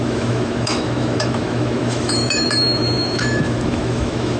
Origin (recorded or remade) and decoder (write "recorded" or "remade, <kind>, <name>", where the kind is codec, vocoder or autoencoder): remade, autoencoder, DAC-VAE